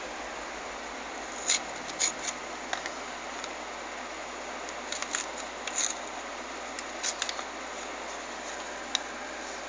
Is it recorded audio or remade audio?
recorded